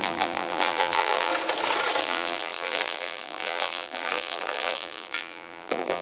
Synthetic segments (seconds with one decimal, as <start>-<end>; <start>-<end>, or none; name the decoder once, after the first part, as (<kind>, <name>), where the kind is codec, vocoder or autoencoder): 0.0-1.3 (vocoder, BigVGAN v2); 2.0-6.0